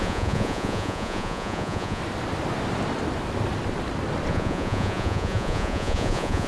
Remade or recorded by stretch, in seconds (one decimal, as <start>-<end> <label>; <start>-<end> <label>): 0.0-2.0 remade; 2.0-4.3 recorded; 4.3-6.5 remade